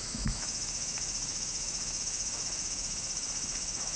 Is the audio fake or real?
fake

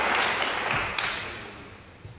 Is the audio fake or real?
real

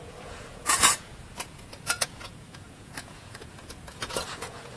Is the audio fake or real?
fake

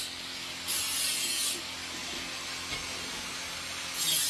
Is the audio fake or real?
real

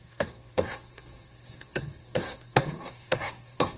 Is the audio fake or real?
fake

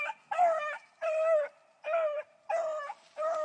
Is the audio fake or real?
real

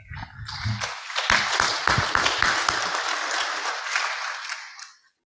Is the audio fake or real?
real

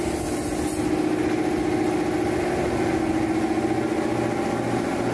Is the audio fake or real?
real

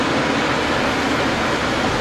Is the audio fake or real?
real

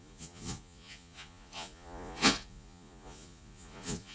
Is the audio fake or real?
fake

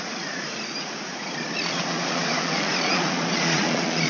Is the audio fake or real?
fake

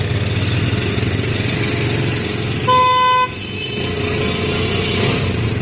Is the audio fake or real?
real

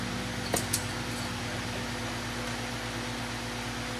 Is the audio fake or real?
real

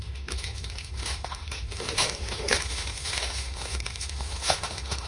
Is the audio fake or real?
fake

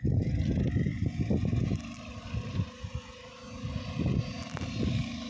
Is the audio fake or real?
real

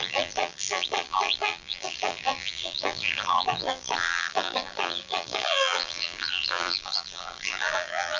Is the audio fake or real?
fake